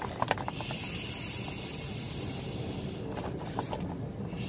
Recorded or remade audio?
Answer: recorded